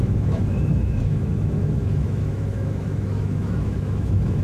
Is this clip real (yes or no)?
no